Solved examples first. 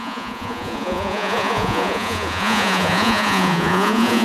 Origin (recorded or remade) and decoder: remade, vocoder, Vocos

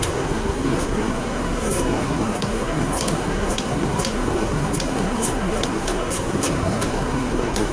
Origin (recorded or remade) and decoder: remade, codec, SNAC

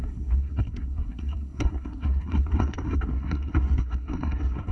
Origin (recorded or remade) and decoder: remade, codec, SNAC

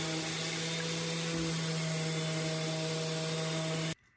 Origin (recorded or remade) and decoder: recorded